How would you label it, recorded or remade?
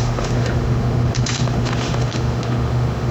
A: remade